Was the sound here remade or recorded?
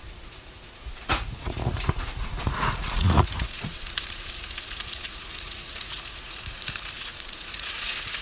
remade